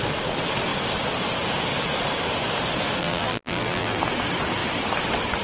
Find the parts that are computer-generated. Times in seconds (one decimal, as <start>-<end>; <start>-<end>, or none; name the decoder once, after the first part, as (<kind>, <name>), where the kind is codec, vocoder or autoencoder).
3.0-4.0 (vocoder, BigVGAN v2)